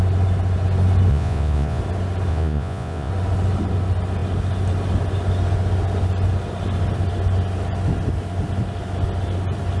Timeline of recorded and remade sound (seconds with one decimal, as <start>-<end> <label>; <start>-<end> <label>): 0.0-1.1 recorded; 1.1-1.8 remade; 1.8-2.3 recorded; 2.3-3.1 remade; 3.1-9.8 recorded